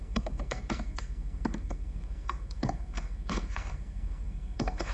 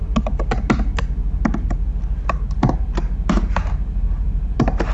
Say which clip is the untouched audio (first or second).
second